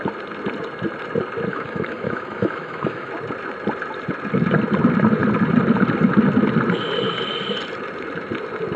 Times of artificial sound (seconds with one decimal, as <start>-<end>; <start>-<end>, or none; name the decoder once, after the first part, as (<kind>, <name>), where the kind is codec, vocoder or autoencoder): 1.5-3.1 (autoencoder, DAC-VAE)